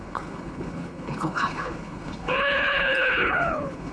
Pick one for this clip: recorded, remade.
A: remade